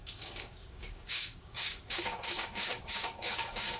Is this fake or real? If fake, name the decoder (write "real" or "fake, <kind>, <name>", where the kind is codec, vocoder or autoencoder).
fake, codec, DAC